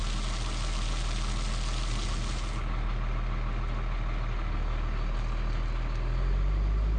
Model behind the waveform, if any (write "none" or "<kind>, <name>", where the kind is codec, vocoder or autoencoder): none